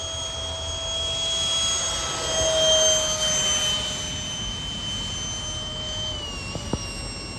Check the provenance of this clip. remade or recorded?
recorded